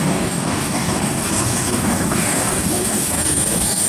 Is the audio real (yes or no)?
no